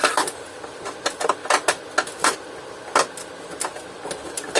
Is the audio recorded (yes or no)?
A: yes